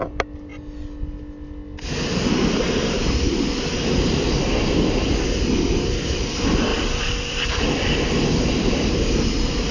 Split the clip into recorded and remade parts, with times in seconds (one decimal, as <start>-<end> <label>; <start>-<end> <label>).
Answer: 0.0-6.7 recorded; 6.7-8.9 remade; 8.9-9.7 recorded